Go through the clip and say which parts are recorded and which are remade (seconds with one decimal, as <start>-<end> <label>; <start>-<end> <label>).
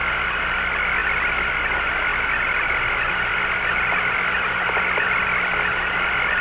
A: 0.0-6.4 recorded